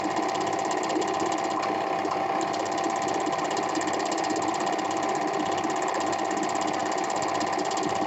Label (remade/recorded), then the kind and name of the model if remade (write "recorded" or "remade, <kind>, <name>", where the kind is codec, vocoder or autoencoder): recorded